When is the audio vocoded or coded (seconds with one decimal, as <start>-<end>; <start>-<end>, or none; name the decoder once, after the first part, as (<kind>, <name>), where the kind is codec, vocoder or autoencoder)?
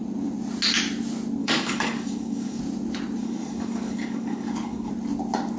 1.4-2.6 (codec, DAC); 3.2-4.9